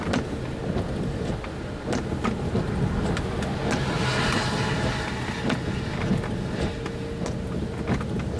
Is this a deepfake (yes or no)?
no